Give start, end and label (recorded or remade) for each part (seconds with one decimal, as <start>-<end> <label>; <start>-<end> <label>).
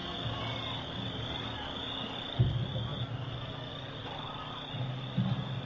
0.0-5.7 recorded